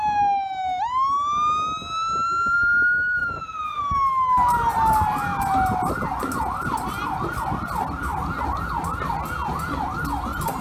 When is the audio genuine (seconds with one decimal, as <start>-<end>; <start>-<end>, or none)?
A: 0.0-3.2; 3.8-10.6